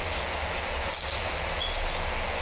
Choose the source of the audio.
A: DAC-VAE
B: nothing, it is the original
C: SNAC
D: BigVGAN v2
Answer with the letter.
B